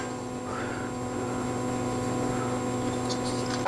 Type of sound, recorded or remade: recorded